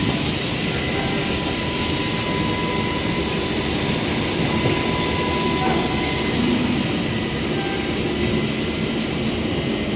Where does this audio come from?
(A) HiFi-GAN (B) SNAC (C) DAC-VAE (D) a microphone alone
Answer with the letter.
D